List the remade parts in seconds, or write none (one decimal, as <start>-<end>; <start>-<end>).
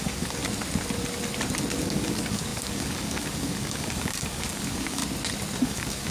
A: 0.0-0.4; 1.8-5.0; 5.6-6.1